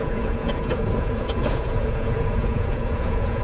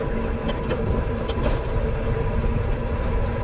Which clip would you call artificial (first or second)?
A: first